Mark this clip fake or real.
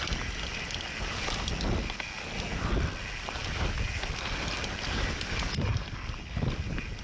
real